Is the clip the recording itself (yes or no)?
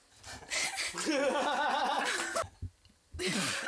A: yes